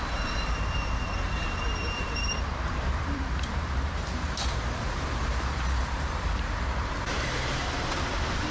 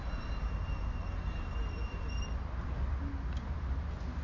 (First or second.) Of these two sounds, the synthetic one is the first